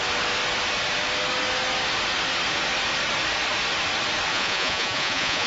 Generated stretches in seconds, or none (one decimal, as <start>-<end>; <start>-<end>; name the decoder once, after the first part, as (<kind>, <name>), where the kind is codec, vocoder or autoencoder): 4.3-5.5 (vocoder, Vocos)